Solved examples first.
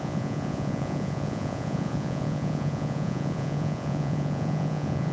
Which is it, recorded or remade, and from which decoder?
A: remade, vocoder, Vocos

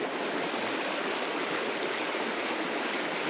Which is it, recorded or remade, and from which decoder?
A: recorded